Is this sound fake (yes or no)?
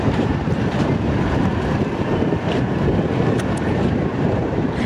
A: yes